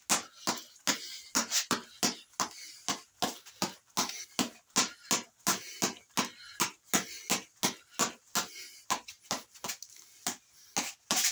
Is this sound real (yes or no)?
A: yes